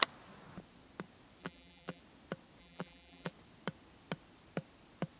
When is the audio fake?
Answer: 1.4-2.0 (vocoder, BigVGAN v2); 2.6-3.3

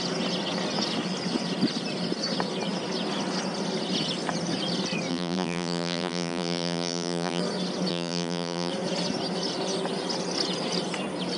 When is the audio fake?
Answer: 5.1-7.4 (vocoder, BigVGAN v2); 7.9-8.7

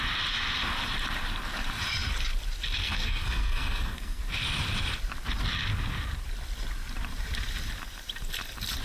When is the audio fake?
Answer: 2.8-4.2 (codec, SNAC)